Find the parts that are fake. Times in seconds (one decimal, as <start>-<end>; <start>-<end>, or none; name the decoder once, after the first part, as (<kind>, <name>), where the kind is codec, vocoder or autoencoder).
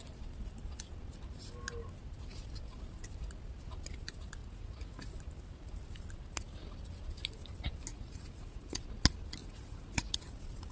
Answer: 4.4-5.1 (vocoder, Vocos); 7.9-8.8; 9.4-10.2